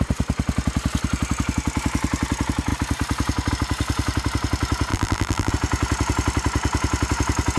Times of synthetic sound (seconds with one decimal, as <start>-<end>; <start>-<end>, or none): 4.9-5.5